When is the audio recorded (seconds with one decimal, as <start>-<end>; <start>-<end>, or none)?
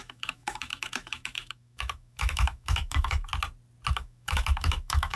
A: 3.3-3.9